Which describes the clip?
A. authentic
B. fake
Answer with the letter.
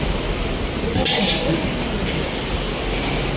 A